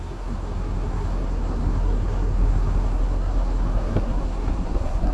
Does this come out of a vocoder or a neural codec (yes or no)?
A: yes